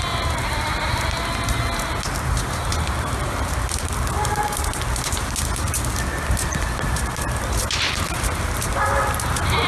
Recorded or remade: recorded